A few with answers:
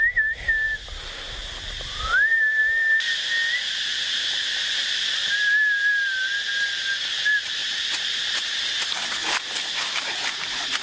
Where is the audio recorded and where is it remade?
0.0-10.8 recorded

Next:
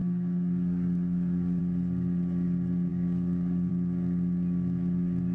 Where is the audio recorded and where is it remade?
0.0-1.6 remade; 1.6-2.9 recorded; 2.9-3.7 remade; 3.7-5.3 recorded

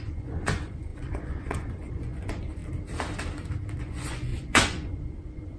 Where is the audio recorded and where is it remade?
0.0-2.6 remade; 2.6-3.8 recorded; 3.8-5.6 remade

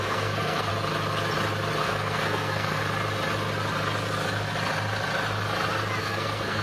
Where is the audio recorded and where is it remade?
0.0-0.7 remade; 0.7-1.8 recorded; 1.8-2.8 remade; 2.8-6.0 recorded; 6.0-6.6 remade

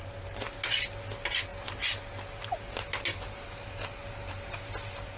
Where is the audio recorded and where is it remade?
0.0-5.2 recorded

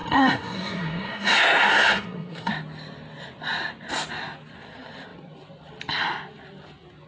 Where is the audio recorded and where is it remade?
0.0-2.5 remade; 2.5-7.1 recorded

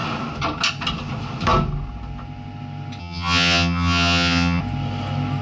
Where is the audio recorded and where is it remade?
0.0-3.0 recorded; 3.0-4.6 remade; 4.6-5.4 recorded

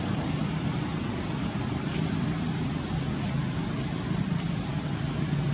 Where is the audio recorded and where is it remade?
0.0-5.5 recorded